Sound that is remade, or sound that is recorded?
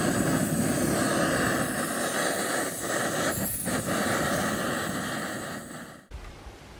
recorded